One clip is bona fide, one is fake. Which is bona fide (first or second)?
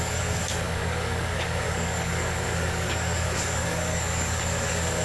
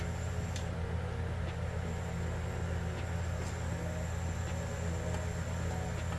second